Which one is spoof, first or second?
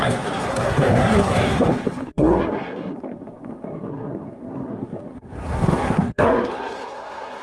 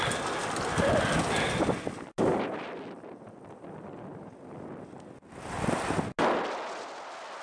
first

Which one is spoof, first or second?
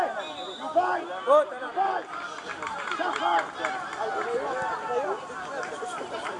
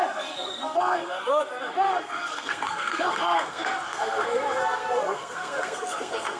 second